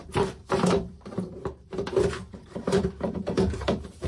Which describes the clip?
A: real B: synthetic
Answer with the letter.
B